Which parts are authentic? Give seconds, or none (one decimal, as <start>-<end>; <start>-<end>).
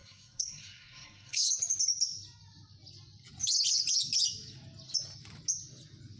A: 1.5-6.2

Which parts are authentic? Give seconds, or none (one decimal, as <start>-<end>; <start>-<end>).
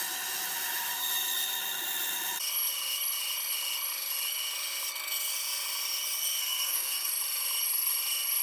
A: 0.0-6.4; 7.1-8.4